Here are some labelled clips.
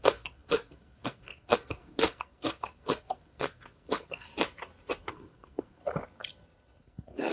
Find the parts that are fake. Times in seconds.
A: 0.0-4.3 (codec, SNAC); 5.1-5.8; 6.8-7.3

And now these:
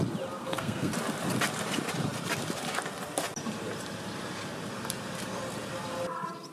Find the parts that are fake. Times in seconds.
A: 0.4-0.9 (codec, SNAC)